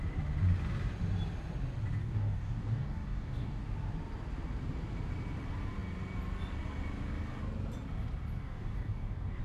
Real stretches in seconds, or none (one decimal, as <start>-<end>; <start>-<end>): 0.0-2.0; 3.6-8.4